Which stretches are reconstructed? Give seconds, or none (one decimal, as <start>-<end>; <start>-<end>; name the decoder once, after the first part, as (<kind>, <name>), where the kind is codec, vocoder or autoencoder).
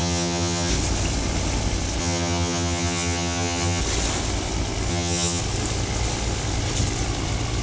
0.0-0.7 (vocoder, HiFi-GAN); 2.0-3.8; 4.9-5.4